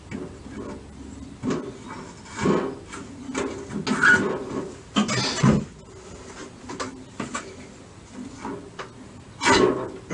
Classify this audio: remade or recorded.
recorded